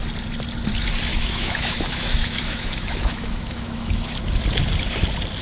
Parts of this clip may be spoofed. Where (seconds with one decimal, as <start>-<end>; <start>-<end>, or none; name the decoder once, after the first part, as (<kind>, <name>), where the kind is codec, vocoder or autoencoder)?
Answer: 1.1-4.2 (autoencoder, DAC-VAE)